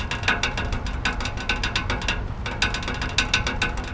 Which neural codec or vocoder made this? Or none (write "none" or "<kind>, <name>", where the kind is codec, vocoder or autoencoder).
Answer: none